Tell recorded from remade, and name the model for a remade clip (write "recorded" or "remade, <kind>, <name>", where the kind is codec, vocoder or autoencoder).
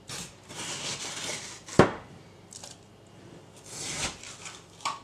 remade, vocoder, BigVGAN v2